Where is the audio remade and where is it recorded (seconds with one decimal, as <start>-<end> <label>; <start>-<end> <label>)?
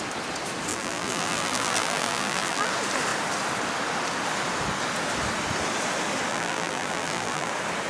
0.0-0.7 recorded; 0.7-2.7 remade; 2.7-6.3 recorded; 6.3-7.5 remade; 7.5-7.9 recorded